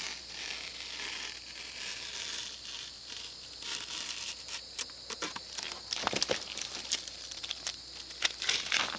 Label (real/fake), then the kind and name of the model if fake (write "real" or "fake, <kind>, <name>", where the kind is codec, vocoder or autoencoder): real